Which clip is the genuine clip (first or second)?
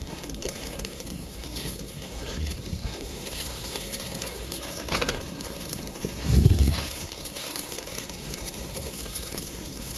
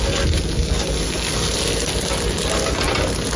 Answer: second